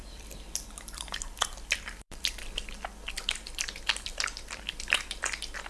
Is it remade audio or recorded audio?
remade